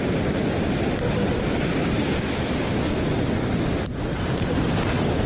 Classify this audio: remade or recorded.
recorded